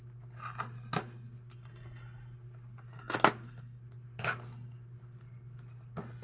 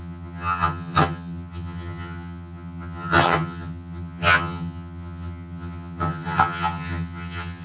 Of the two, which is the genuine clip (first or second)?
first